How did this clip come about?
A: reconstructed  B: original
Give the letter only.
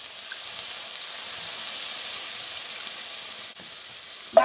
B